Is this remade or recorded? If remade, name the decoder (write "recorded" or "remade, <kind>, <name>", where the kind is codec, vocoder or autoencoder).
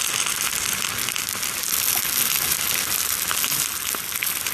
recorded